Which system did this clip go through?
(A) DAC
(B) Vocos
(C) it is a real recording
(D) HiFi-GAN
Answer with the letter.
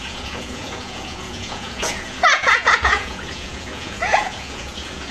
B